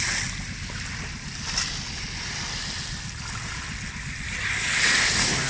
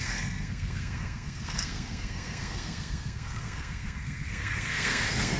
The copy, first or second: second